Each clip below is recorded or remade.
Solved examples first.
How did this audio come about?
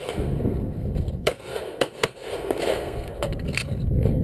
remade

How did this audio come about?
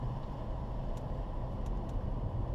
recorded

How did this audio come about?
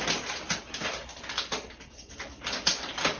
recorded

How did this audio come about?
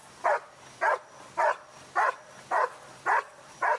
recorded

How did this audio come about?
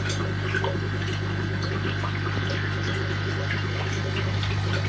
recorded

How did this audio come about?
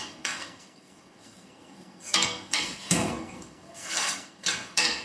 remade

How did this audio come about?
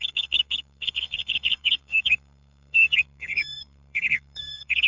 remade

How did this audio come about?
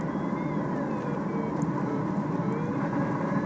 recorded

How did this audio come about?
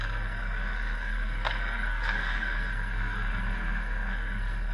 remade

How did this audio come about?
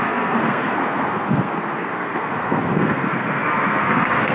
remade